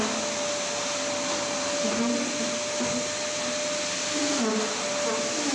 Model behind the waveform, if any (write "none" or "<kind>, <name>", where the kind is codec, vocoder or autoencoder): none